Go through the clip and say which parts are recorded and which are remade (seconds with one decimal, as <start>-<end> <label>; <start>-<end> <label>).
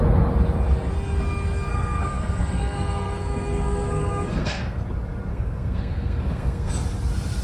0.0-1.7 recorded; 1.7-4.8 remade; 4.8-5.3 recorded; 5.3-6.7 remade; 6.7-7.4 recorded